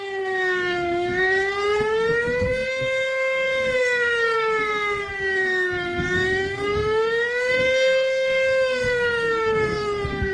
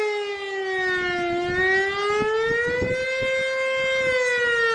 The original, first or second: second